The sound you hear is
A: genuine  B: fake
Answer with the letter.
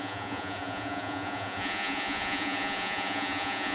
B